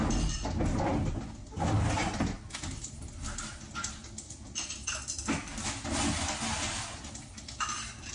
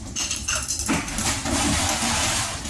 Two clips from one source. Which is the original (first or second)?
first